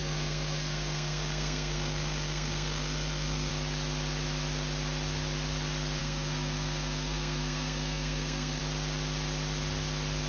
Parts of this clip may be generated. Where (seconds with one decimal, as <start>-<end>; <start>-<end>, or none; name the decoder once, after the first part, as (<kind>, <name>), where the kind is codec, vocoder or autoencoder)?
0.0-3.5 (codec, SNAC); 6.0-8.6